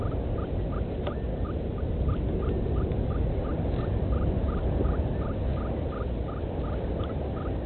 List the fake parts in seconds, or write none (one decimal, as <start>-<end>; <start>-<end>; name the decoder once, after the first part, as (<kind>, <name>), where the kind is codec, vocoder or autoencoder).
none